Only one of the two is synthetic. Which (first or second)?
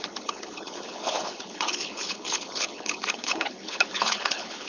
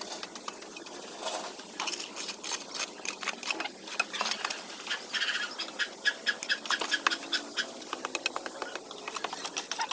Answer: first